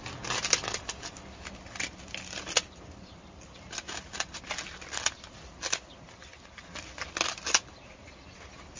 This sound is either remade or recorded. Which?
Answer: recorded